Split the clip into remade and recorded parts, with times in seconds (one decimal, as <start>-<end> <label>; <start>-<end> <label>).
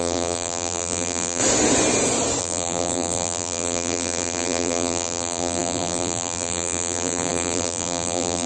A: 0.0-1.4 remade; 1.4-2.4 recorded; 2.4-8.5 remade